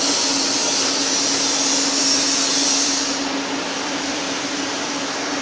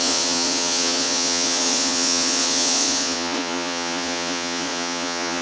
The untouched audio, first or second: first